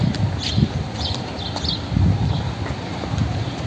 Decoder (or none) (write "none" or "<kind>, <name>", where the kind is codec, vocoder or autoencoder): none